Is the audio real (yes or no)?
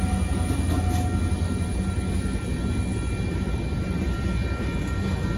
yes